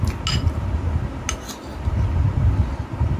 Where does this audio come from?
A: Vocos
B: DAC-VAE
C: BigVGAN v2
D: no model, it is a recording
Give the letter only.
D